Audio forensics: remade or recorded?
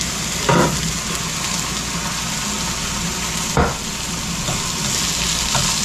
recorded